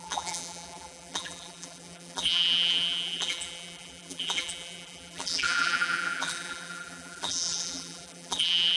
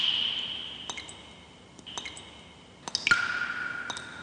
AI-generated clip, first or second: first